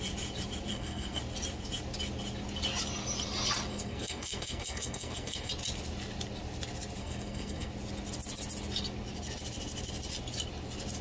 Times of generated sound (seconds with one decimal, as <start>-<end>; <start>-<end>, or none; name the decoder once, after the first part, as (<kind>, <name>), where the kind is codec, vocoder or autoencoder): 0.7-1.2 (codec, SNAC); 3.7-5.5; 7.0-7.7